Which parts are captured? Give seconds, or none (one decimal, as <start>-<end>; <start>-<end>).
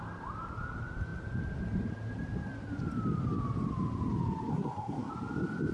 0.0-4.5; 5.1-5.7